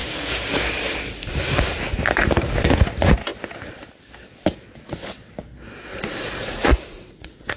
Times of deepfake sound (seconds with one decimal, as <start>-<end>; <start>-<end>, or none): 5.9-7.6